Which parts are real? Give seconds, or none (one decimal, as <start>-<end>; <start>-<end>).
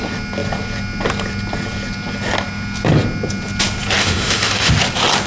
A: 0.0-4.0; 4.7-5.3